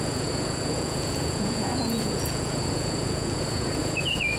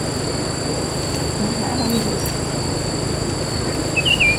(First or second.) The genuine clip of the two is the second